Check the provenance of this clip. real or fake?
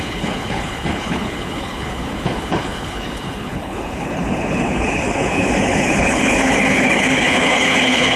fake